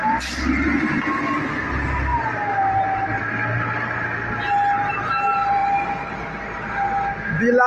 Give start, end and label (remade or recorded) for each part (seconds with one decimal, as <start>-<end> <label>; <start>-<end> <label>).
0.0-7.7 recorded